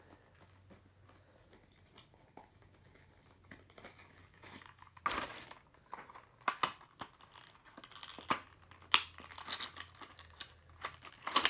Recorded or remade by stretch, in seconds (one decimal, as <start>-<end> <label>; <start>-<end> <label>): 0.0-4.2 recorded; 4.2-5.0 remade; 5.0-11.5 recorded